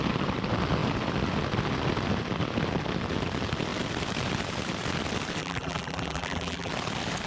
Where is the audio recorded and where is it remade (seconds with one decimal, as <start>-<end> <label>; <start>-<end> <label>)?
0.0-5.4 recorded; 5.4-6.7 remade; 6.7-7.3 recorded

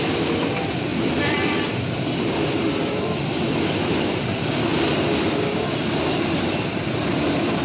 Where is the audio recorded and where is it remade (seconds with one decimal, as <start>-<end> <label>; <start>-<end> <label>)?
0.0-4.7 remade; 4.7-6.1 recorded; 6.1-7.6 remade